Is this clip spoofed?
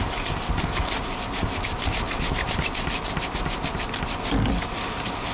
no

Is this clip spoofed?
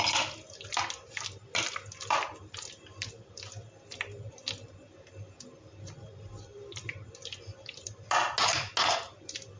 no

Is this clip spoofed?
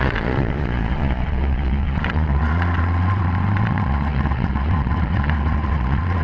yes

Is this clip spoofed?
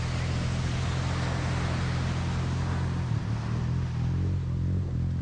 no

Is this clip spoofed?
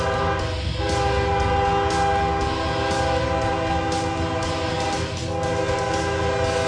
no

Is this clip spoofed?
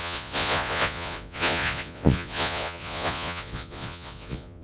yes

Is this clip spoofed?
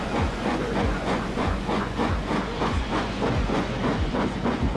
yes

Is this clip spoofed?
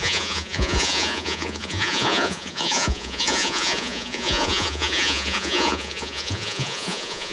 yes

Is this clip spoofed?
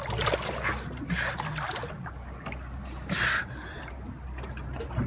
no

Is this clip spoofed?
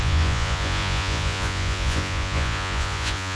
yes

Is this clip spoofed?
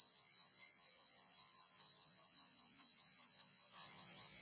yes